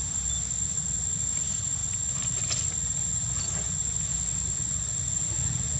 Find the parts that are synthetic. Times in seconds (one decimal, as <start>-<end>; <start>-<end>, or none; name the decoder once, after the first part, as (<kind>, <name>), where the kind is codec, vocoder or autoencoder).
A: none